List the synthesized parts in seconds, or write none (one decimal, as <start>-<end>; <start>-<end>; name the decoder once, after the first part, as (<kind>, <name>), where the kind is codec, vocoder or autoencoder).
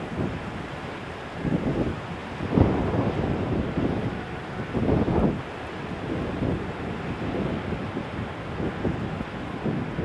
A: none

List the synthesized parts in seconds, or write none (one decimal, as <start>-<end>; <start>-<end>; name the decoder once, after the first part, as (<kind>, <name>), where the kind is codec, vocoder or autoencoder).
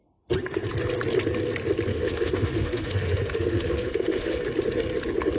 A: 1.9-4.4 (autoencoder, DAC-VAE)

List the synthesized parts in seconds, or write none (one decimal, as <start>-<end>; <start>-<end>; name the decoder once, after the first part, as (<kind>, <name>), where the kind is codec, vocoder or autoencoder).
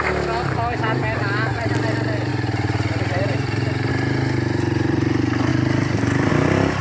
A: 2.3-3.9 (vocoder, BigVGAN v2)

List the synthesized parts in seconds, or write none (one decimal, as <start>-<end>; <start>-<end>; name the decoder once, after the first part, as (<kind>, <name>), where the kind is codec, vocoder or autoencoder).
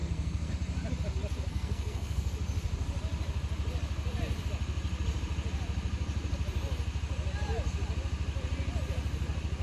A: 0.0-0.5 (codec, SNAC); 1.5-2.3